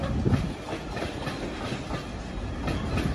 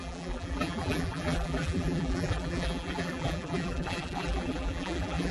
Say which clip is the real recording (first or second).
first